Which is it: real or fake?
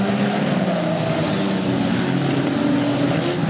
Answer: real